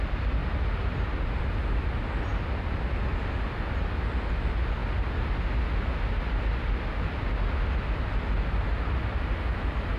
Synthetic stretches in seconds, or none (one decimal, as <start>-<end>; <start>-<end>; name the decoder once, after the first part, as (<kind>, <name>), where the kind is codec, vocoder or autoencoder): none